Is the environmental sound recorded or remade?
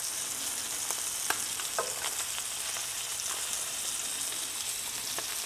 recorded